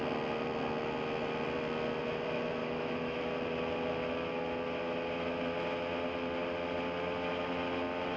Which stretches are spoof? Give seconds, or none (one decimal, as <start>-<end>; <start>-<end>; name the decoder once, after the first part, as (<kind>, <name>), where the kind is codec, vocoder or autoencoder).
2.6-3.2 (autoencoder, DAC-VAE)